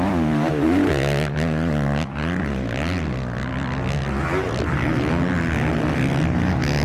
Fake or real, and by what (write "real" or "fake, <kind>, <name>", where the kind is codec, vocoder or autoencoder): real